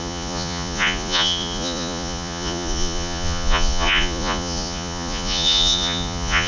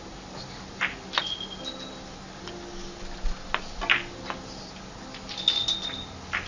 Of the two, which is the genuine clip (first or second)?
second